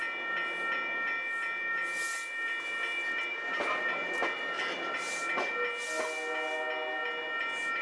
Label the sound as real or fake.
real